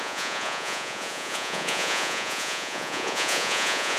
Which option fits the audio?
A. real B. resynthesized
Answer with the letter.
B